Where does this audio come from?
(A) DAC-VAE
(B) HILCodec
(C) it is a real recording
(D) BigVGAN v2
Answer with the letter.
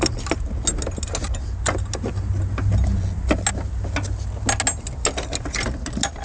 C